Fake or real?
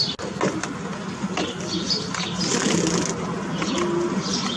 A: real